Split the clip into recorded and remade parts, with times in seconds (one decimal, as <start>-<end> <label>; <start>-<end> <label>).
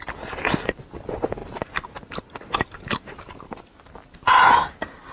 0.0-1.4 recorded; 1.4-3.1 remade; 3.1-5.1 recorded